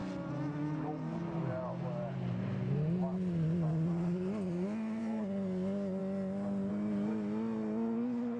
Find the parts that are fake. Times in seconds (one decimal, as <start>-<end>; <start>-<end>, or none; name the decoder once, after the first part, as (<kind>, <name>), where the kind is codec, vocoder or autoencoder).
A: none